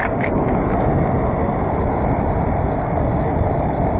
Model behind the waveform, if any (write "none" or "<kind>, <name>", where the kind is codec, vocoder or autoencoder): none